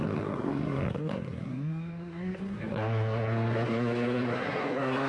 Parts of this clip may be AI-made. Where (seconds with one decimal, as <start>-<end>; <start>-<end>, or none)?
0.0-5.1